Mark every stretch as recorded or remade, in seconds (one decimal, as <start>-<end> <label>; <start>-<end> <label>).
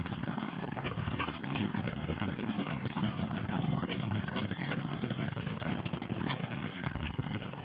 0.0-5.7 remade; 5.7-6.2 recorded; 6.2-7.6 remade